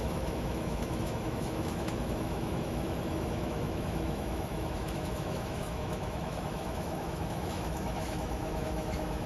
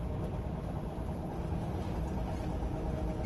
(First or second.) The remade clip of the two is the first